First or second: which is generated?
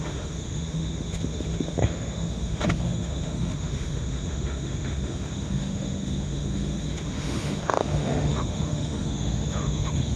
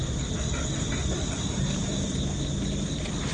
first